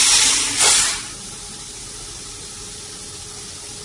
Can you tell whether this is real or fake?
real